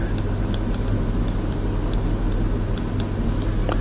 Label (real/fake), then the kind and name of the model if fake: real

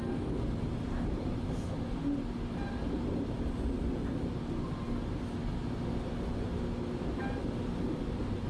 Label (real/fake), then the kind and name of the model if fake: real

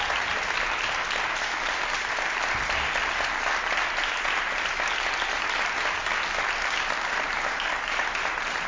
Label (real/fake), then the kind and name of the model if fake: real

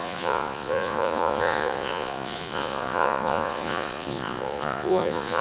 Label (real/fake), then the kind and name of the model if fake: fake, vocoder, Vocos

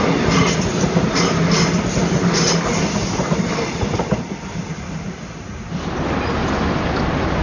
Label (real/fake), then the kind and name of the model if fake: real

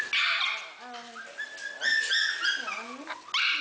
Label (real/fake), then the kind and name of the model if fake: real